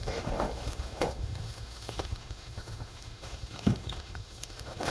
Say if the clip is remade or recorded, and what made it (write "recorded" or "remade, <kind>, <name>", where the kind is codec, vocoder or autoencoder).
remade, autoencoder, DAC-VAE